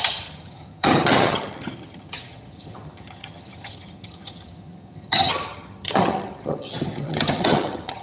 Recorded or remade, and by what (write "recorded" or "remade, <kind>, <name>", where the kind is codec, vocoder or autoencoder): remade, vocoder, HiFi-GAN